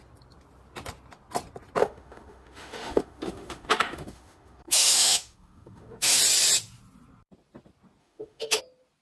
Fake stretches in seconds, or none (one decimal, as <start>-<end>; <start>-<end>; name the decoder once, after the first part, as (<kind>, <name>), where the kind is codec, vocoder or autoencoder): 1.8-6.2 (autoencoder, DAC-VAE); 8.0-8.6